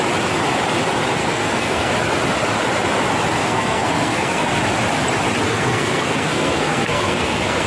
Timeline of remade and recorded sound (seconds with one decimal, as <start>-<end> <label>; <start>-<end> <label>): 0.0-1.2 recorded; 1.2-1.9 remade; 1.9-3.4 recorded; 3.4-4.6 remade; 4.6-5.5 recorded; 5.5-7.7 remade